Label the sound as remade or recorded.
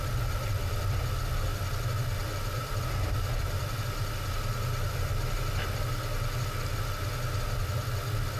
recorded